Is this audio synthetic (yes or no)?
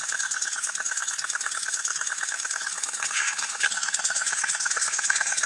yes